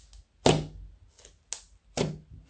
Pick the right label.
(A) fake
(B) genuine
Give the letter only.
B